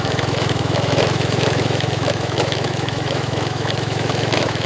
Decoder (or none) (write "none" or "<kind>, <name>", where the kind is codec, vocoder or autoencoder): autoencoder, DAC-VAE